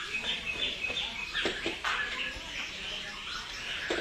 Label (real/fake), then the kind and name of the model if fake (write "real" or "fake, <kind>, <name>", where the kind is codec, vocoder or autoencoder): fake, vocoder, BigVGAN v2